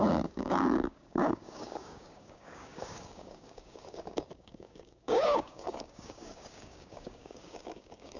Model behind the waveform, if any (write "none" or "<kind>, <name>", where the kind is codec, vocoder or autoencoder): codec, DAC